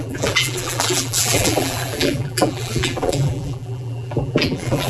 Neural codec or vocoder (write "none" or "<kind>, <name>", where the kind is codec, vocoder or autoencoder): vocoder, BigVGAN v2